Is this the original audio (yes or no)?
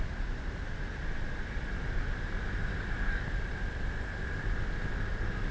no